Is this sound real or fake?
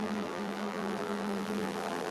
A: fake